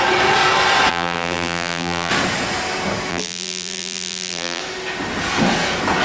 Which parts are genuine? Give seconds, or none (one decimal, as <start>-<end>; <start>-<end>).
0.0-0.9; 2.1-3.1; 4.6-6.0